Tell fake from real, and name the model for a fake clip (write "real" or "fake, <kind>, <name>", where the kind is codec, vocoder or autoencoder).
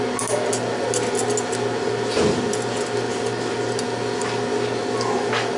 real